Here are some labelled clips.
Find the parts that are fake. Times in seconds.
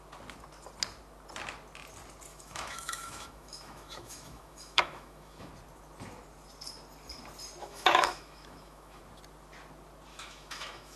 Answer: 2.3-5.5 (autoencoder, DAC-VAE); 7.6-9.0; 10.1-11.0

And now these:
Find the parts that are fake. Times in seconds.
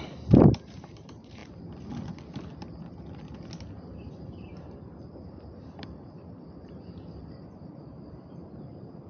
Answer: 0.0-1.4 (vocoder, BigVGAN v2); 4.1-9.1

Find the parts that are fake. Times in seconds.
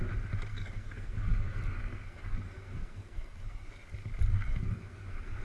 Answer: 0.5-3.7 (codec, SNAC); 4.3-5.4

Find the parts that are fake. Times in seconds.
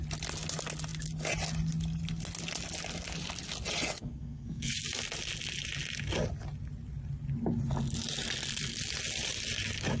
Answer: 4.0-4.7 (codec, SNAC)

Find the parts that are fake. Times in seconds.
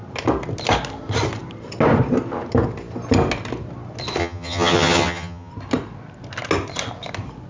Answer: 4.2-5.5 (vocoder, HiFi-GAN)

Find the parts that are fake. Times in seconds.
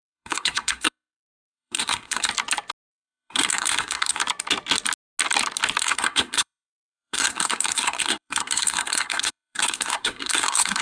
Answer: 0.0-2.3 (codec, SNAC); 2.9-4.2; 5.8-10.8